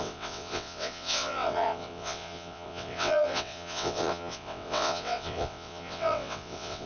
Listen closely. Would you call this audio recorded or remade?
remade